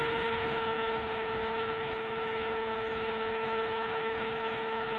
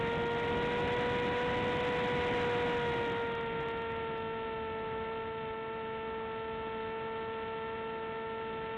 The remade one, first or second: first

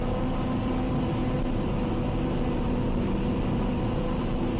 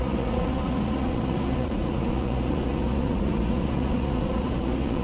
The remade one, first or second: second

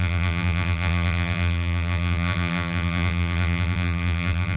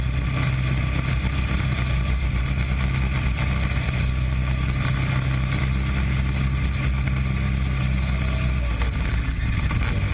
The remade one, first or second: first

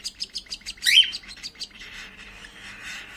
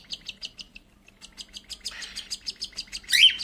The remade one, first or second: first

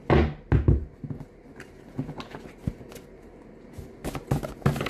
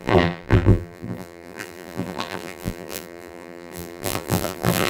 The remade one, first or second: second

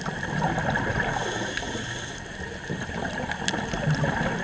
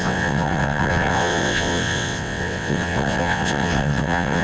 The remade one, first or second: second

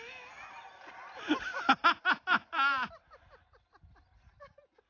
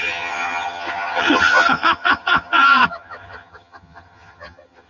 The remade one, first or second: second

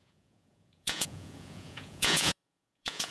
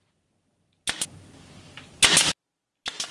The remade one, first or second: first